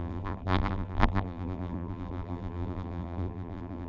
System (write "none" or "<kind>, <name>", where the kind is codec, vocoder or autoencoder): vocoder, BigVGAN v2